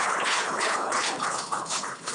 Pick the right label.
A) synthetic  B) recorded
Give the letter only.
A